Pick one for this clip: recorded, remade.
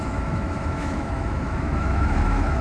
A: remade